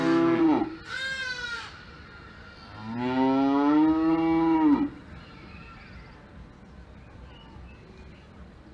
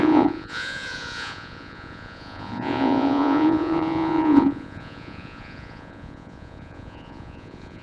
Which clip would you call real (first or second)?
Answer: first